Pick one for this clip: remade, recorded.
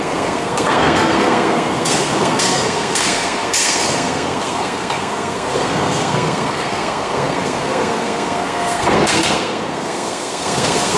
remade